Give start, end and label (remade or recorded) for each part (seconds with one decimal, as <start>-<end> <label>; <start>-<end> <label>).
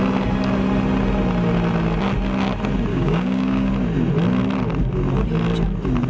0.0-2.9 recorded; 2.9-3.7 remade; 3.7-6.1 recorded